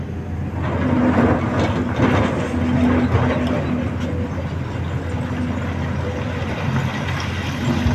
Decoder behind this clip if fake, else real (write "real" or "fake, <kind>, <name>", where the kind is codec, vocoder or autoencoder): real